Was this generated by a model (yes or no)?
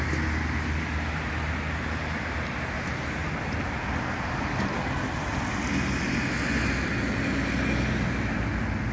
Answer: no